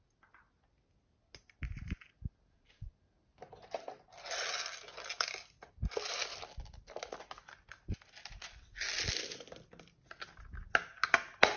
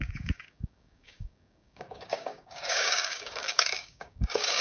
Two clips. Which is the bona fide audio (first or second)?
first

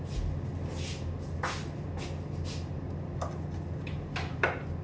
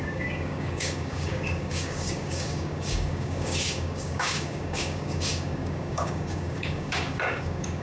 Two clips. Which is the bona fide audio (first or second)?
first